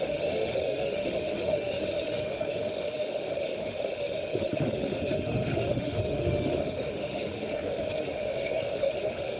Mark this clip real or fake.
fake